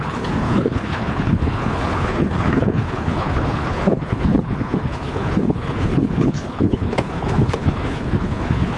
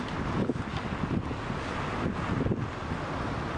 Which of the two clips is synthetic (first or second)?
first